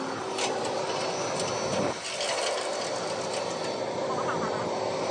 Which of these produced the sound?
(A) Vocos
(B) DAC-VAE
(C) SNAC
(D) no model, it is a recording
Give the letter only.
D